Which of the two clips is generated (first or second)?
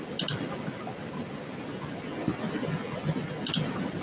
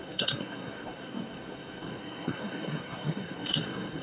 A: second